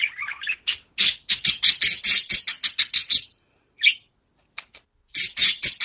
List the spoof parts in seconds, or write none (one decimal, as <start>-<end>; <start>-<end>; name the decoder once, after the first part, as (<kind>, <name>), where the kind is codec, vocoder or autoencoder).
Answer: none